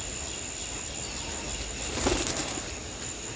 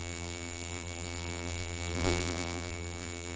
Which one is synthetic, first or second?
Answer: second